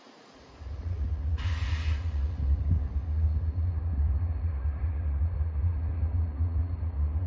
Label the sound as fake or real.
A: fake